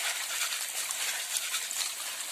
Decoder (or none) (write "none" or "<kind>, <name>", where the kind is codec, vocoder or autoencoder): none